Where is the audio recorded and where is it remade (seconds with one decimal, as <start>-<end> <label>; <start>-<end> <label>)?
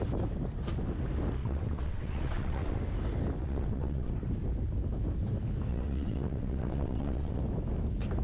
0.0-1.4 recorded; 1.4-2.8 remade; 2.8-3.4 recorded; 3.4-4.1 remade; 4.1-5.7 recorded; 5.7-7.4 remade; 7.4-8.2 recorded